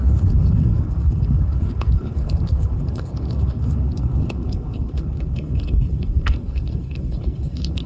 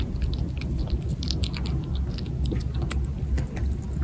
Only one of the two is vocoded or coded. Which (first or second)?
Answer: first